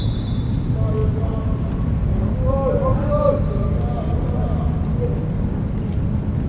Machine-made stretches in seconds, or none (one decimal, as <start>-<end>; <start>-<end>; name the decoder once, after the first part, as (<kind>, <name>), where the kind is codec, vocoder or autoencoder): none